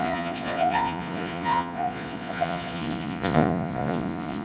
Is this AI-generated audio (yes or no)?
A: yes